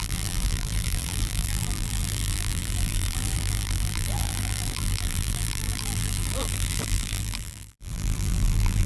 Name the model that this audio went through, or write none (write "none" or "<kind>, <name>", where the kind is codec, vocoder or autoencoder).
vocoder, BigVGAN v2